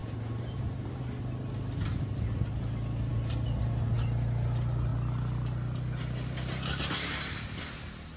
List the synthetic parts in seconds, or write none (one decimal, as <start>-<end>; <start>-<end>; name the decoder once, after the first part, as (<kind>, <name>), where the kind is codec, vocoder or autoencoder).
none